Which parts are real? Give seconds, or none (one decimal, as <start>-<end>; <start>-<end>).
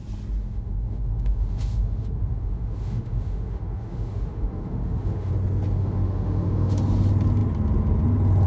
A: 0.0-0.4; 5.3-5.8; 6.8-8.5